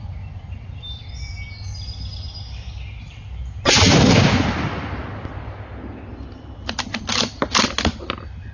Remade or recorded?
recorded